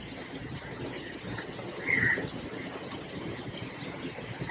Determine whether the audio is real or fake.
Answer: real